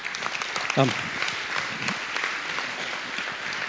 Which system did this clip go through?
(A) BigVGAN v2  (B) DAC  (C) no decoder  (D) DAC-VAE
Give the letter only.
C